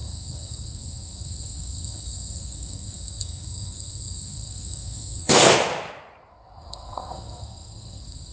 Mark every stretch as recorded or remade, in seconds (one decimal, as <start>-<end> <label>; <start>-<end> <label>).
0.0-5.5 remade; 5.5-6.3 recorded; 6.3-8.3 remade